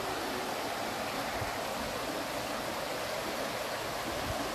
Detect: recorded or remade recorded